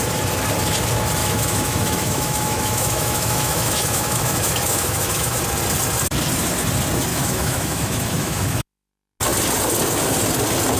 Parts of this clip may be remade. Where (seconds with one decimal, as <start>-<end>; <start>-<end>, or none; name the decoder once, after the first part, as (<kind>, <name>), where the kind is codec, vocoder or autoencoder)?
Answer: 1.2-5.4 (autoencoder, DAC-VAE); 7.1-8.9